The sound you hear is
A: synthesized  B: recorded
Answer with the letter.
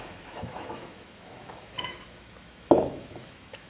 A